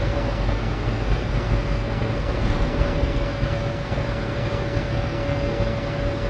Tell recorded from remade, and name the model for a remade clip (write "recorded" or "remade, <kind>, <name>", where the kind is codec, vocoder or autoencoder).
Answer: remade, codec, SNAC